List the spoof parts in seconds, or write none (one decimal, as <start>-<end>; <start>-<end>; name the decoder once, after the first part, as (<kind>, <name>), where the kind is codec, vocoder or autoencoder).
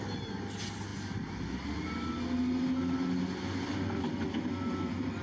none